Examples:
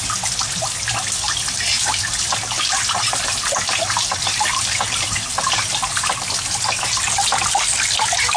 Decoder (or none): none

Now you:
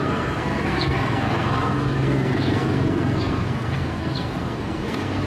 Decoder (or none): codec, SNAC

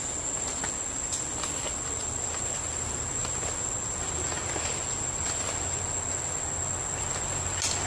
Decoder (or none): none